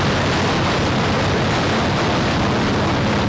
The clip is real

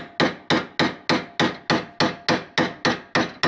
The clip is real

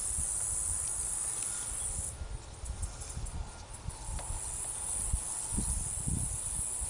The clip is real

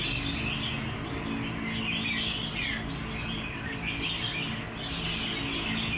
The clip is real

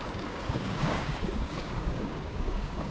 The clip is fake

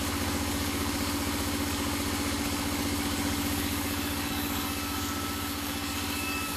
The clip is fake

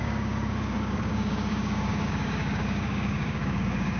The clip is fake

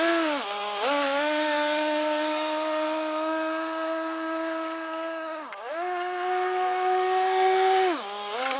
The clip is fake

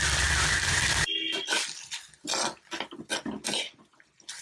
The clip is real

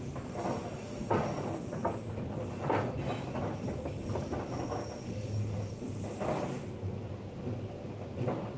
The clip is real